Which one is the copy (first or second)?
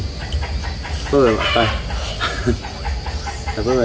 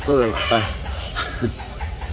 second